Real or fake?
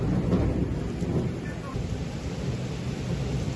real